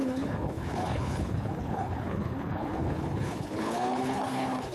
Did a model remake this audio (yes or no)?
yes